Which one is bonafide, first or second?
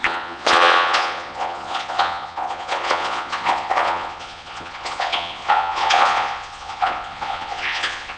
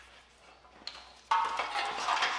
second